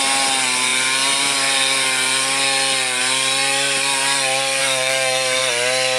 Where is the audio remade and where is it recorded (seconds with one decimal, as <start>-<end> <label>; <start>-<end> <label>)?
0.0-4.6 recorded; 4.6-5.4 remade; 5.4-6.0 recorded